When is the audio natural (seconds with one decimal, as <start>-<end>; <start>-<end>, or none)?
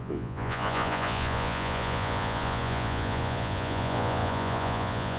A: none